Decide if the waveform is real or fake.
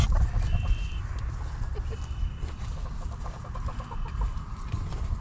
real